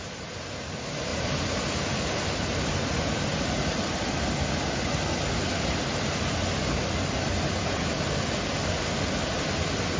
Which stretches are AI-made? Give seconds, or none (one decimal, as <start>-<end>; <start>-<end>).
1.1-2.2